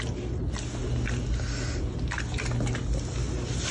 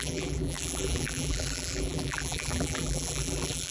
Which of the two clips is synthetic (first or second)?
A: second